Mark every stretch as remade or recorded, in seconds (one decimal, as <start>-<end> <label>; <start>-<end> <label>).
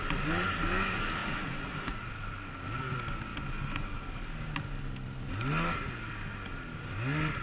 0.0-1.2 recorded; 1.2-2.1 remade; 2.1-7.4 recorded